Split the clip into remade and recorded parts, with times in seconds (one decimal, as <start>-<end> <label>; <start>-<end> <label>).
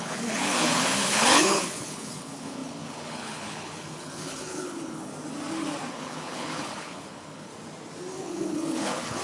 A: 0.0-5.1 remade; 5.1-5.9 recorded; 5.9-7.5 remade; 7.5-8.2 recorded; 8.2-9.2 remade